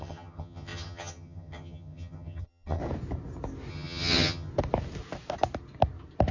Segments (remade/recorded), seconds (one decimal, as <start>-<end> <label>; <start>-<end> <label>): 0.0-2.8 remade; 2.8-3.7 recorded; 3.7-4.5 remade; 4.5-6.3 recorded